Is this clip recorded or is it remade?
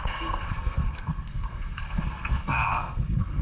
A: remade